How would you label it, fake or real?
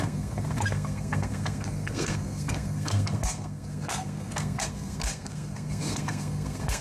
fake